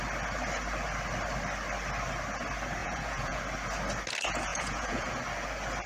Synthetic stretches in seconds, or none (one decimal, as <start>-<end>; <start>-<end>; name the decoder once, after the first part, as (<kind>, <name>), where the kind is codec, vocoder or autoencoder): 2.8-3.4 (vocoder, Vocos); 4.5-5.2